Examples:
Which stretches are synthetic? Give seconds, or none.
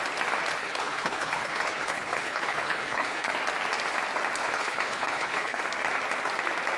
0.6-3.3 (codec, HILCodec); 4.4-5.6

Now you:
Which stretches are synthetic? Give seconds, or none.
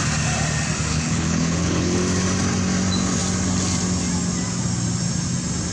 0.9-2.0 (codec, HILCodec)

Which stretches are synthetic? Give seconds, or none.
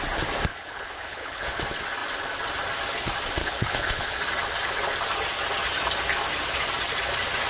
0.5-1.4 (codec, HILCodec); 3.4-4.2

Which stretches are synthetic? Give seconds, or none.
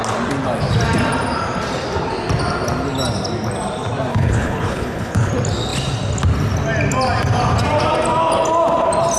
4.1-5.3 (codec, HILCodec)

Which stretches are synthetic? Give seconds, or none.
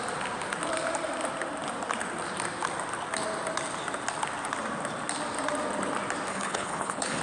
6.3-7.2 (codec, HILCodec)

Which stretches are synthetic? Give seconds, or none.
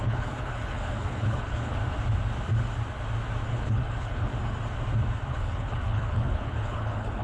0.0-1.8 (codec, HILCodec); 3.5-4.3; 5.3-7.2